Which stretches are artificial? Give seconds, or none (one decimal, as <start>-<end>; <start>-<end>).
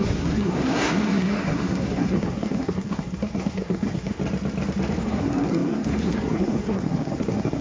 0.0-4.2; 5.0-7.6